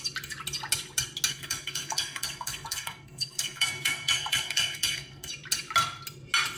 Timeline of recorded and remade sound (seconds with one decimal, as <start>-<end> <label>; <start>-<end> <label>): 0.0-1.3 recorded; 1.3-5.3 remade; 5.3-6.6 recorded